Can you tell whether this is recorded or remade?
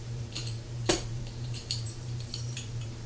remade